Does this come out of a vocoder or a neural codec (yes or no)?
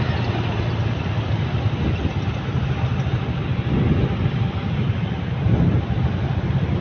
no